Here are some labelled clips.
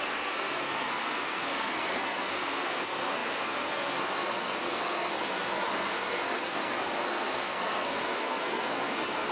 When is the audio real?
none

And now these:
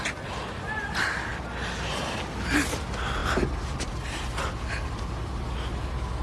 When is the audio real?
0.0-6.2